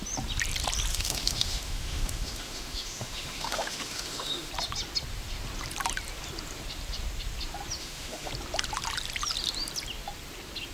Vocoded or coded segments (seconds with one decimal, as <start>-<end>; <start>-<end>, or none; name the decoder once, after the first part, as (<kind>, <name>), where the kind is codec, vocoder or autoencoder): 0.9-4.5 (autoencoder, DAC-VAE); 7.8-8.3

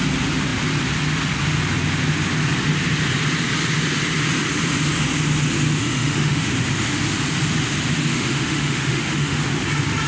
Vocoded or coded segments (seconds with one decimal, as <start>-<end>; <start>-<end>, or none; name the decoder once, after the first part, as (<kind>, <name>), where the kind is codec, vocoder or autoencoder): 5.8-6.5 (autoencoder, DAC-VAE); 8.1-9.4

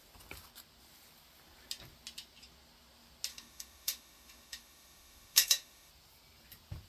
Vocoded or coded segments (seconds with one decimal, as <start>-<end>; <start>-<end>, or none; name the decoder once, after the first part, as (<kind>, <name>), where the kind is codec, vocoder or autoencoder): 3.3-5.9 (autoencoder, DAC-VAE)

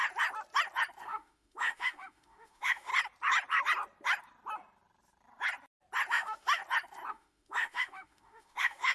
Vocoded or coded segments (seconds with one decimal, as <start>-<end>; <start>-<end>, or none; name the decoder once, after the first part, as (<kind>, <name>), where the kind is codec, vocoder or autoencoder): 1.0-2.9 (autoencoder, DAC-VAE); 6.1-6.6; 7.1-8.9

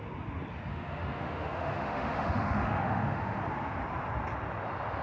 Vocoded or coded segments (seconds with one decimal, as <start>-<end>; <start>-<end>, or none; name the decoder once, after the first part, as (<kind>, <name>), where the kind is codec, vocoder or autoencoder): 0.7-3.4 (autoencoder, DAC-VAE)

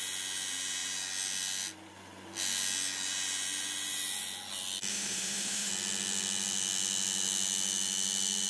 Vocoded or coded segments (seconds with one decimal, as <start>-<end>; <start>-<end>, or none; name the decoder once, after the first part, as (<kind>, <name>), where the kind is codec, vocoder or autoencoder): 4.9-5.7 (autoencoder, DAC-VAE)